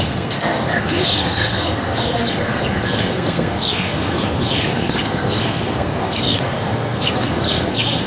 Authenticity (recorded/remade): remade